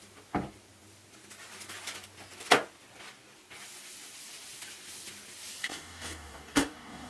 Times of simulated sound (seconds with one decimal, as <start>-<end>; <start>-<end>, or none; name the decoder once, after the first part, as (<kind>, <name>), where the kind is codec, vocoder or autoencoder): 5.6-7.1 (codec, DAC)